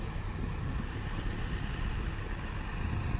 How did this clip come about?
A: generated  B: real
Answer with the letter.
B